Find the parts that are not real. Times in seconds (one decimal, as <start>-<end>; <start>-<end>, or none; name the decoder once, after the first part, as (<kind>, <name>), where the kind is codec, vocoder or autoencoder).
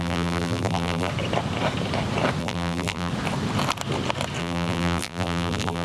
0.0-1.1 (vocoder, BigVGAN v2); 2.4-3.1; 4.4-5.8